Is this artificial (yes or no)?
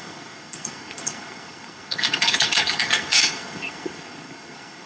yes